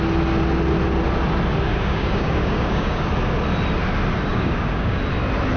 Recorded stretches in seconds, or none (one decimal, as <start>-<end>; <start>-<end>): 0.0-1.7; 3.1-4.3; 5.0-5.6